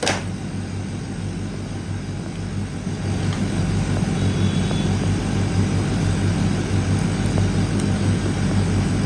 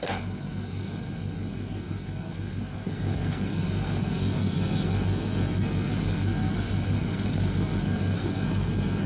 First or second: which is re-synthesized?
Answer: second